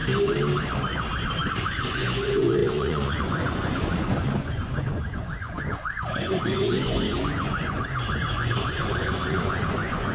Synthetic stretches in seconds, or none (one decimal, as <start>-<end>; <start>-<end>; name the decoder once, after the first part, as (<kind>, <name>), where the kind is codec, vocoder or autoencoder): 1.5-10.1 (vocoder, Vocos)